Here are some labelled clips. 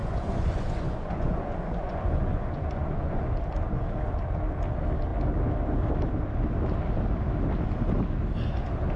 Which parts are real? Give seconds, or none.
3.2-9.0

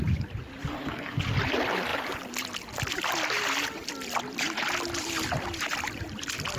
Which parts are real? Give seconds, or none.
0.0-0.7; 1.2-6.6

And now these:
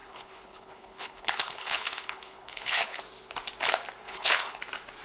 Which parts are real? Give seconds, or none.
3.0-4.0; 4.6-5.0

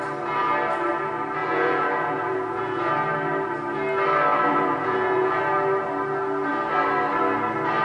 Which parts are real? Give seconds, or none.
0.0-1.4; 2.9-4.3; 5.4-7.8

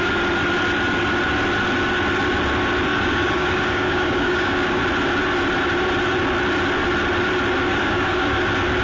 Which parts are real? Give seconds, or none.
0.0-2.9; 4.8-7.7; 8.4-8.8

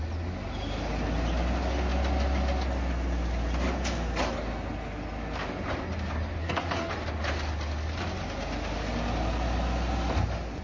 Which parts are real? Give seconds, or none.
0.0-6.4; 6.9-10.6

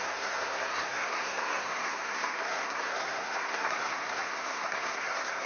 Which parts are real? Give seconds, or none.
none